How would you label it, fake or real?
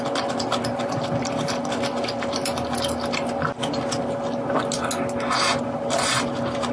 real